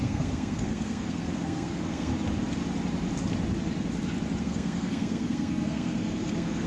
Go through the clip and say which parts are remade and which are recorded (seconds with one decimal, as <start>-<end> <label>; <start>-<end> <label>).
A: 0.0-2.1 remade; 2.1-4.4 recorded; 4.4-6.7 remade